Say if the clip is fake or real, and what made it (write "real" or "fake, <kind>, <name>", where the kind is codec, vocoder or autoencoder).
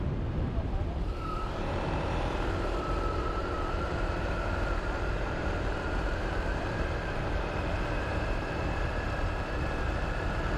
fake, vocoder, BigVGAN v2